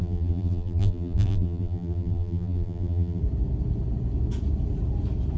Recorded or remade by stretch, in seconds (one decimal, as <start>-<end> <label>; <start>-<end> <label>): 0.0-3.2 remade; 3.2-5.4 recorded